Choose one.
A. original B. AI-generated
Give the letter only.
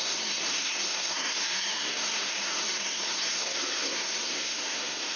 B